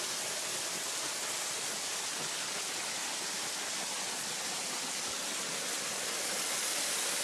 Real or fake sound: real